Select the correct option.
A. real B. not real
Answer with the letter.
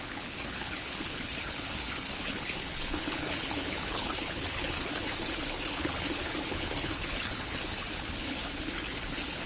B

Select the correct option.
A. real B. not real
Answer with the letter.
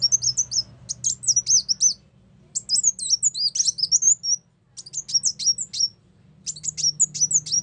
A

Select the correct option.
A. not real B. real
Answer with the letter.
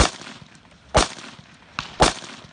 B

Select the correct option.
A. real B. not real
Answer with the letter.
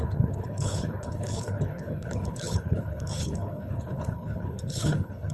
B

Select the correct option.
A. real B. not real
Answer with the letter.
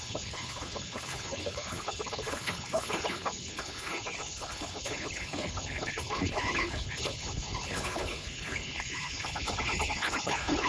B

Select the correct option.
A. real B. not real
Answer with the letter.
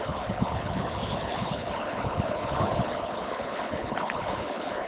B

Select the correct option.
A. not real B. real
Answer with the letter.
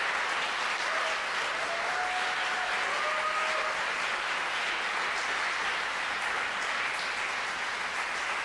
B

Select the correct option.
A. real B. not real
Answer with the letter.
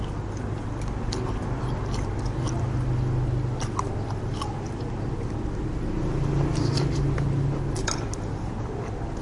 A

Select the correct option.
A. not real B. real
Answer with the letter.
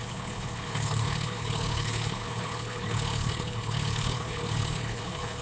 A